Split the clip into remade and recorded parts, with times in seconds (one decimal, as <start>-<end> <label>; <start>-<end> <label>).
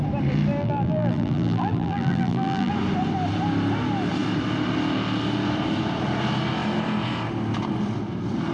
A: 0.0-0.6 recorded; 0.6-2.7 remade; 2.7-8.5 recorded